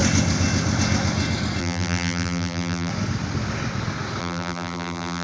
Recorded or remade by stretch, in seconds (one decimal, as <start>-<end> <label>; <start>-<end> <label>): 0.0-1.6 recorded; 1.6-2.9 remade; 2.9-4.2 recorded; 4.2-5.2 remade